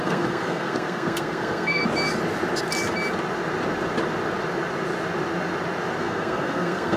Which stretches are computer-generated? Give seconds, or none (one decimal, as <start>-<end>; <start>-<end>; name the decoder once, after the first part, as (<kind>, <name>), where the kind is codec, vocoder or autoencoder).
0.0-1.8 (codec, SNAC); 6.0-7.0